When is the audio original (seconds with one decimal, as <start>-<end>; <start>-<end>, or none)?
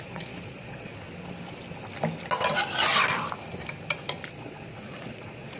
0.9-4.3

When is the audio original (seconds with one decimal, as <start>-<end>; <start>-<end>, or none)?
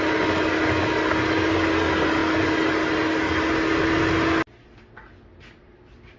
0.0-6.2